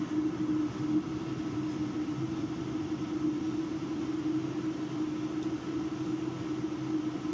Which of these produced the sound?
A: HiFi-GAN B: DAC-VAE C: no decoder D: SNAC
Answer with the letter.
C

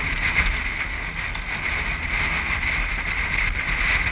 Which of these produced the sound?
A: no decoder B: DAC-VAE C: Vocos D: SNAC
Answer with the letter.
A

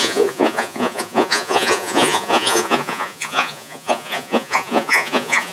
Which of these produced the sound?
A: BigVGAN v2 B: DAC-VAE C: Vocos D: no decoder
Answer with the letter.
C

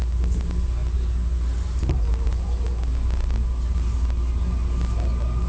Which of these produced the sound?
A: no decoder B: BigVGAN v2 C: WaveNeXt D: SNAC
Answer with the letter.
A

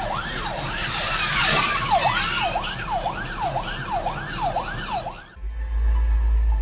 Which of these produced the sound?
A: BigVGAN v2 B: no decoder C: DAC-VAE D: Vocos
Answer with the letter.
B